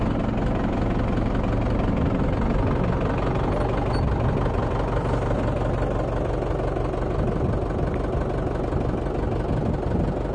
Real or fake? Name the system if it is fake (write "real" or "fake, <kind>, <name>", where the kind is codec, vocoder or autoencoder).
real